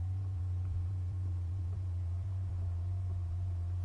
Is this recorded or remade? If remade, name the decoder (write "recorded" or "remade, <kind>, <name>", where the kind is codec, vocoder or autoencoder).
remade, vocoder, BigVGAN v2